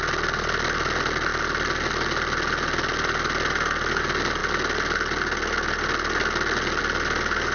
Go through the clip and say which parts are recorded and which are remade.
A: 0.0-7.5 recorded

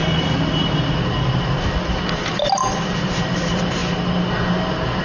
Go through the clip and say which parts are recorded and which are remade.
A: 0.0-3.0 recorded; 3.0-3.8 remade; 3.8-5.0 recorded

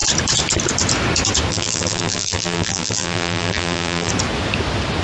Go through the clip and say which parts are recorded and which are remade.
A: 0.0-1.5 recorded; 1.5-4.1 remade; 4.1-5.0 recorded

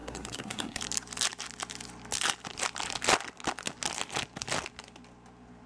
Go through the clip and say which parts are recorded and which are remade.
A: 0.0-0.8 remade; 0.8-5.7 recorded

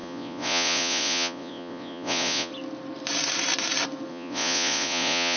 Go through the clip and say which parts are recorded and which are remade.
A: 0.0-2.5 remade; 2.5-4.1 recorded; 4.1-5.4 remade

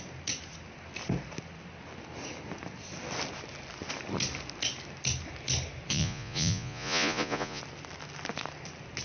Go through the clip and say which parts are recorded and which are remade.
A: 0.0-5.9 recorded; 5.9-7.6 remade; 7.6-9.0 recorded